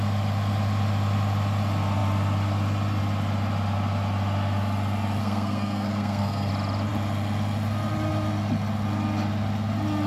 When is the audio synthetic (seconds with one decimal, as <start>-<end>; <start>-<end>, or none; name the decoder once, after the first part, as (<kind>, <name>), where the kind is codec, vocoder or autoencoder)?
5.2-6.5 (codec, SNAC)